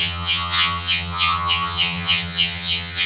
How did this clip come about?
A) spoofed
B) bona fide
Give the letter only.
A